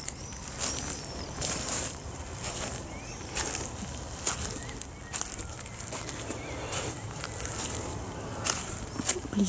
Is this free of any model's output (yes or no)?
yes